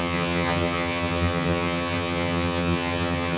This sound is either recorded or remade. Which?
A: remade